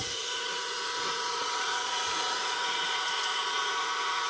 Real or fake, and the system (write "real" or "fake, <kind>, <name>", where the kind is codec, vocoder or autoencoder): fake, vocoder, Vocos